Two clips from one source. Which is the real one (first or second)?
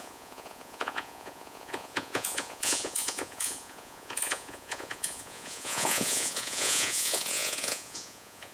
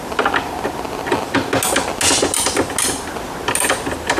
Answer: second